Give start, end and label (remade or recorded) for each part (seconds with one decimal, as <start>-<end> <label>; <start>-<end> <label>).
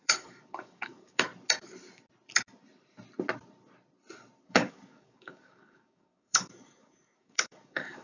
0.0-1.3 remade; 1.3-4.4 recorded; 4.4-8.0 remade